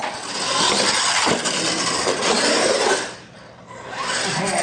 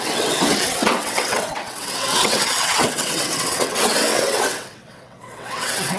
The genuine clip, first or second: first